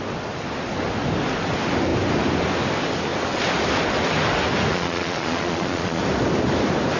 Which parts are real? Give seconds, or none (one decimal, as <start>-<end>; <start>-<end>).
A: 0.0-4.7; 6.0-7.0